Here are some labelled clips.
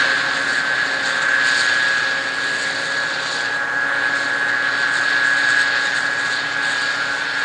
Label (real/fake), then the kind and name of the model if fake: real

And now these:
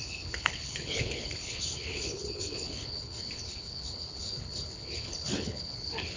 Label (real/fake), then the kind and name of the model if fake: fake, codec, HILCodec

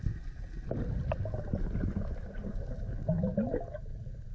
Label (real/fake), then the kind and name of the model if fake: real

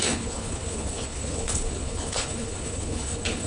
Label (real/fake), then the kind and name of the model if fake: fake, codec, HILCodec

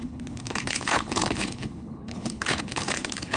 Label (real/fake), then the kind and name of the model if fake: fake, codec, HILCodec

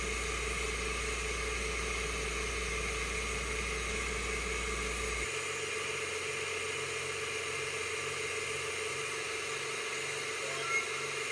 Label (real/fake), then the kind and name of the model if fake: real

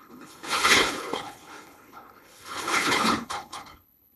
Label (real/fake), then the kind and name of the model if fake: fake, codec, HILCodec